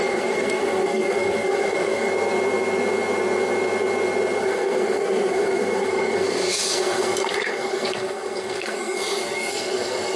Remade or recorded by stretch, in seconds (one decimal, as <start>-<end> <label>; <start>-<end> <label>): 0.0-2.1 remade; 2.1-4.4 recorded; 4.4-10.2 remade